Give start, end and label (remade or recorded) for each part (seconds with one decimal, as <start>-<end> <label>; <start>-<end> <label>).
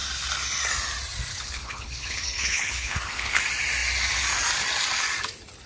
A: 0.0-1.3 recorded; 1.3-3.4 remade; 3.4-5.7 recorded